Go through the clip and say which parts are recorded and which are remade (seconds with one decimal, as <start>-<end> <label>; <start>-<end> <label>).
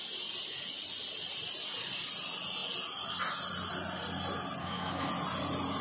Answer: 0.0-4.6 recorded; 4.6-5.1 remade; 5.1-5.8 recorded